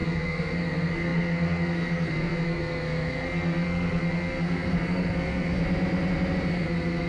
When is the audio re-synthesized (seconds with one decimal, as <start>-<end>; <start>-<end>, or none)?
0.0-5.6; 6.5-7.1